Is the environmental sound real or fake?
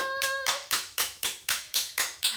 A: fake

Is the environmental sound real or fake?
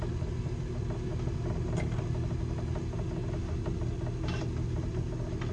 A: real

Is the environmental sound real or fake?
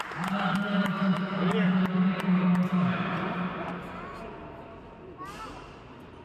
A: real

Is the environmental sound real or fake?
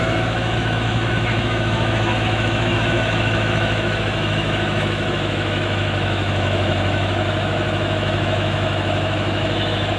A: fake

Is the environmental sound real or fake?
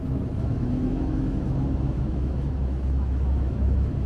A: fake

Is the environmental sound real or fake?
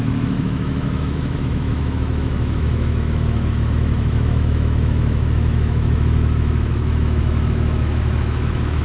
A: fake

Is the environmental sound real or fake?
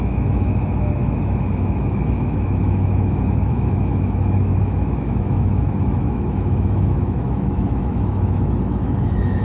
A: fake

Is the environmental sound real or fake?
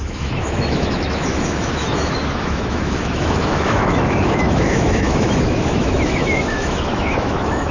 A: fake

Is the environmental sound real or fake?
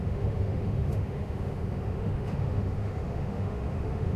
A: fake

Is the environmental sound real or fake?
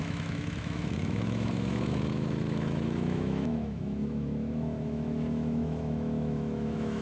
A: fake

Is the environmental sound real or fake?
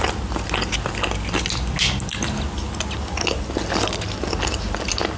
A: real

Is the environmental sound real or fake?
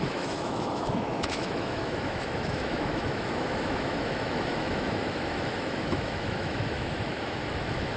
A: fake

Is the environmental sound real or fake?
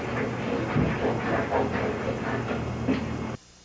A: real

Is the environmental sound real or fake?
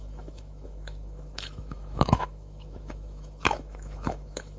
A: fake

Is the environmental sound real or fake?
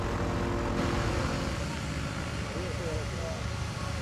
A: real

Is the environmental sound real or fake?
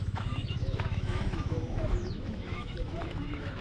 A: fake